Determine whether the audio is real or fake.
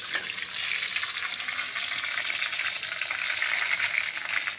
real